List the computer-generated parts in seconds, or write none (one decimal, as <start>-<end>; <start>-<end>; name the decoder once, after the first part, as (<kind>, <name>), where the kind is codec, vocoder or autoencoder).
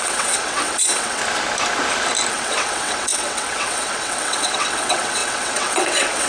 0.0-1.2 (vocoder, WaveNeXt); 2.3-6.3